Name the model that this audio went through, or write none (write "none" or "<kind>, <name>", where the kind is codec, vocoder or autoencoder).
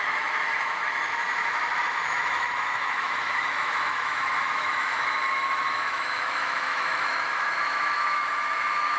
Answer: autoencoder, DAC-VAE